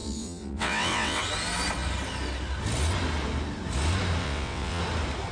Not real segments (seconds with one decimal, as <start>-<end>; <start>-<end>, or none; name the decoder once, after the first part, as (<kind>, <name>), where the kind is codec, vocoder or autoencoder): 0.0-1.2 (vocoder, WaveNeXt); 4.2-4.8